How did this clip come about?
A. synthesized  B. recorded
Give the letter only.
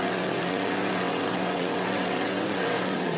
A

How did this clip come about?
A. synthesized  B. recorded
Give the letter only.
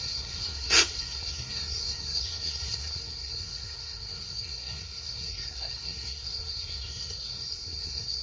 A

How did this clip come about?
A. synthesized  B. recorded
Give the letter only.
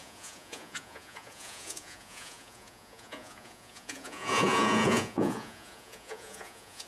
A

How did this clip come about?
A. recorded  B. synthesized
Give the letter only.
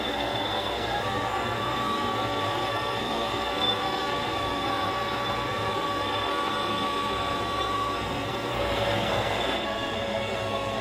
B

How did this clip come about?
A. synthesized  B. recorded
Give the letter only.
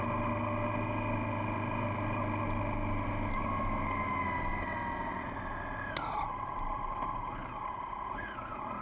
B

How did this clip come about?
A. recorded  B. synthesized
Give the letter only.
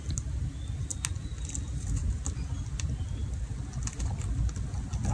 A